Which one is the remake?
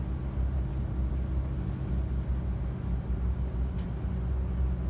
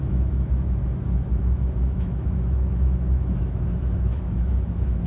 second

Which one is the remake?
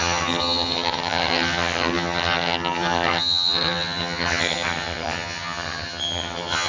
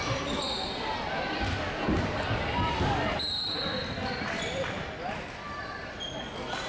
first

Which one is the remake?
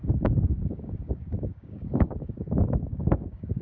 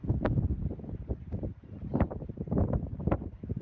first